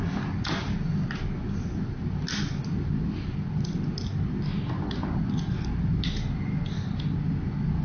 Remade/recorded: recorded